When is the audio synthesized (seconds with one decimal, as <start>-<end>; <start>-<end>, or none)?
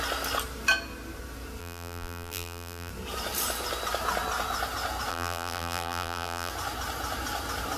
1.6-2.9; 5.1-6.5